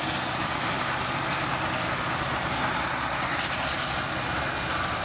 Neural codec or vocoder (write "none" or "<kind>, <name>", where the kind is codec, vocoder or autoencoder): none